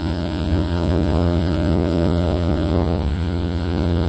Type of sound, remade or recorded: remade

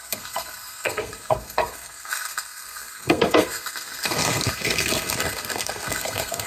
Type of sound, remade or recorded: remade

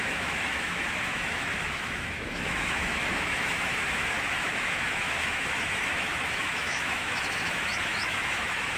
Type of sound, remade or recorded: remade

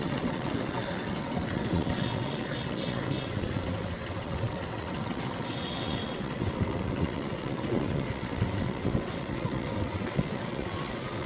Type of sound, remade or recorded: remade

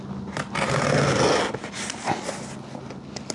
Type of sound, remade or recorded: recorded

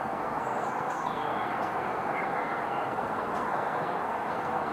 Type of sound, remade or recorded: remade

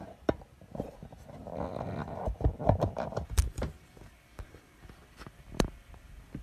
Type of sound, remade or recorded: remade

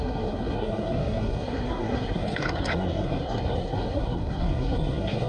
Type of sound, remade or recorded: remade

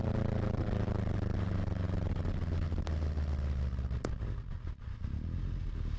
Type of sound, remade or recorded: recorded